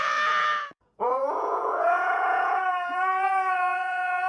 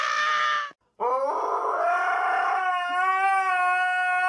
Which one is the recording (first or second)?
second